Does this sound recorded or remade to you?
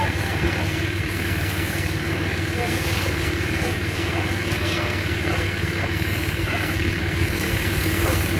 remade